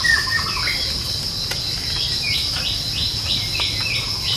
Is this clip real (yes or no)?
yes